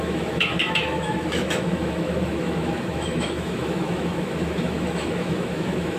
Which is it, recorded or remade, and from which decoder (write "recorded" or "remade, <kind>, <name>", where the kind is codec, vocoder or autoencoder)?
remade, autoencoder, DAC-VAE